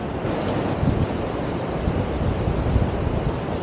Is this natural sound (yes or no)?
yes